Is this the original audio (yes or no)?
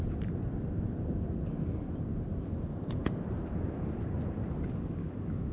yes